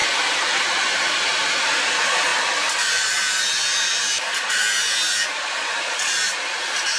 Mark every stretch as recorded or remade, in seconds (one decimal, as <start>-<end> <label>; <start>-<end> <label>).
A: 0.0-0.9 recorded; 0.9-7.0 remade